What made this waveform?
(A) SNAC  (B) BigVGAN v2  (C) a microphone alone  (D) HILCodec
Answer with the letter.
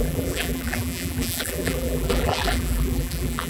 B